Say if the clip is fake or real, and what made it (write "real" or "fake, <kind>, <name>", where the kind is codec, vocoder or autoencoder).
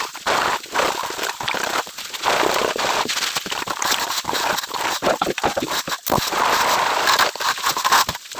real